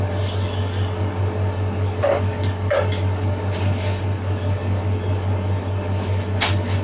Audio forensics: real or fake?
fake